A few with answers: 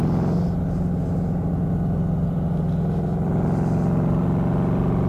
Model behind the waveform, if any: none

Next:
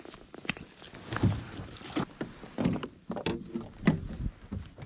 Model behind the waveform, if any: none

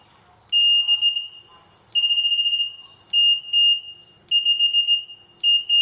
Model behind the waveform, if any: none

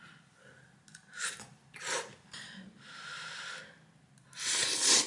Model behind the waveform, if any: none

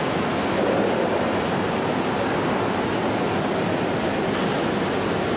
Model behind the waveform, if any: none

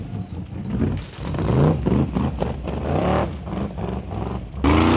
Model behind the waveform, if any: none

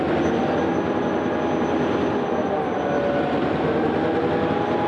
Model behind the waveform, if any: none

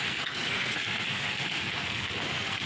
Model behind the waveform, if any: codec, SNAC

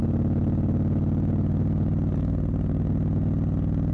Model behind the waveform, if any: none